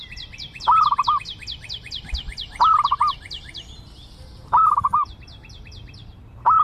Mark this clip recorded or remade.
recorded